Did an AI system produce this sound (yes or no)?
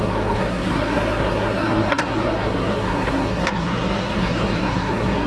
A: yes